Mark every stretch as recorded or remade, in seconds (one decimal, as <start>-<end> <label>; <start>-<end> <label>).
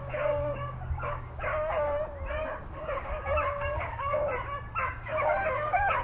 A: 0.0-1.5 remade; 1.5-2.4 recorded; 2.4-4.2 remade; 4.2-4.9 recorded; 4.9-6.0 remade